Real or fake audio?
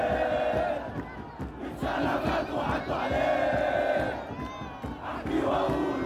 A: real